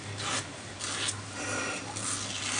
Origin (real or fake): real